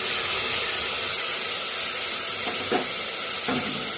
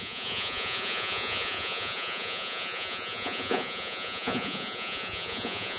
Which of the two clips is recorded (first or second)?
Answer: first